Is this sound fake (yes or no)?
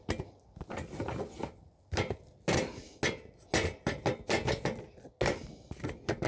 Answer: no